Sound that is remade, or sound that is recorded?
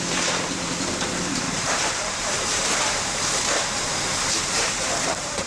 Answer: remade